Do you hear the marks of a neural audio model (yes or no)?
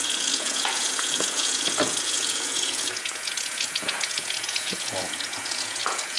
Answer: yes